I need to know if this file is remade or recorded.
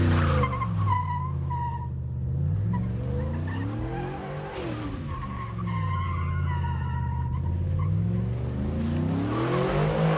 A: recorded